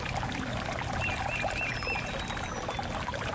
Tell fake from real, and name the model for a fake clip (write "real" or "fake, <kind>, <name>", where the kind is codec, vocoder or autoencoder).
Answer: real